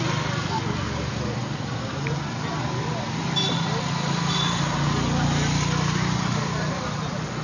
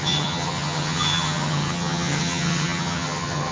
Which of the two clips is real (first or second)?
first